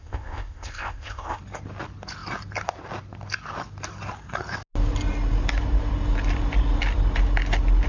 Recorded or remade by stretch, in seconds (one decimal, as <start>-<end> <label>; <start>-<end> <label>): 0.0-1.4 remade; 1.4-7.9 recorded